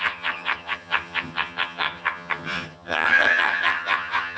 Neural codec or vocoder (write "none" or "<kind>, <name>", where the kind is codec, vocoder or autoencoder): vocoder, HiFi-GAN